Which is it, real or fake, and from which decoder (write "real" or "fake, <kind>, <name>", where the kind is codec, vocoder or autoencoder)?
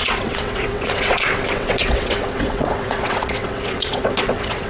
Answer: fake, vocoder, WaveNeXt